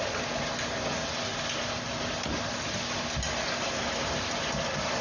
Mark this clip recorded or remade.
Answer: recorded